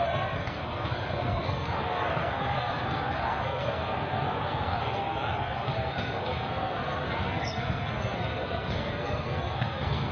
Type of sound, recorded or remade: remade